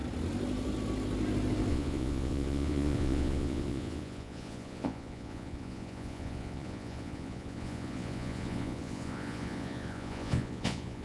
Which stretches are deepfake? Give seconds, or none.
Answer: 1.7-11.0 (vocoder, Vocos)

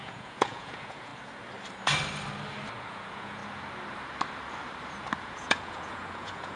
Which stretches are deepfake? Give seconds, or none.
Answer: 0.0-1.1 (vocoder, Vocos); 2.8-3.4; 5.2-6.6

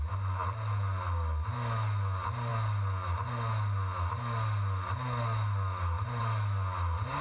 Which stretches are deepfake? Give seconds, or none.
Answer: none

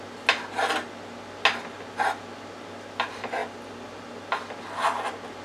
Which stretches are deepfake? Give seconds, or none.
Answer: none

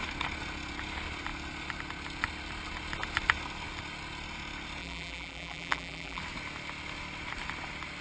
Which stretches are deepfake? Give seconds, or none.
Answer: 4.8-6.2 (vocoder, BigVGAN v2)

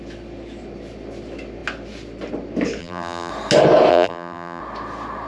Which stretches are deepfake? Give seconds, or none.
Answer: 2.8-3.3 (vocoder, BigVGAN v2); 3.9-4.6

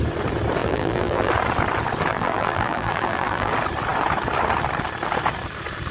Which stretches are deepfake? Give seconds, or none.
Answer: 0.6-1.3 (vocoder, BigVGAN v2); 2.1-3.5